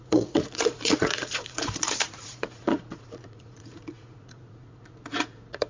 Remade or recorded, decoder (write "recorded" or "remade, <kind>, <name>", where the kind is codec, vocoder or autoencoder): remade, vocoder, Vocos